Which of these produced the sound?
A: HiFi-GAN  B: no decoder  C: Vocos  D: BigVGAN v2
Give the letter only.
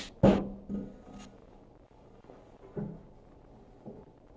B